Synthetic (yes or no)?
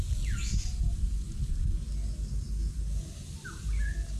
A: no